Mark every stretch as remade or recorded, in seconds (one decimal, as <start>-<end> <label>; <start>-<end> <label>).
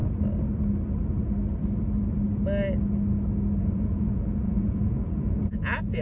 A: 0.0-3.6 recorded; 3.6-6.0 remade